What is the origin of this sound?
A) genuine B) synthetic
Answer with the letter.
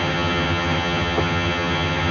B